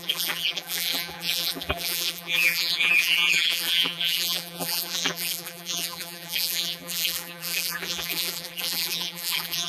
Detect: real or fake fake